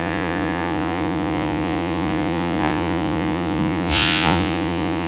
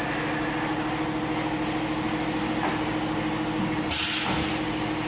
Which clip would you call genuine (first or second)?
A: second